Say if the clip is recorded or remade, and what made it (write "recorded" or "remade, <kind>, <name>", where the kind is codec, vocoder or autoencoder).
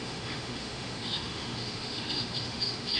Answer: remade, autoencoder, DAC-VAE